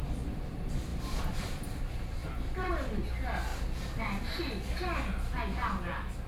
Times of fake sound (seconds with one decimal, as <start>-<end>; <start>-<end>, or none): 0.9-1.8; 2.2-3.1; 3.5-4.4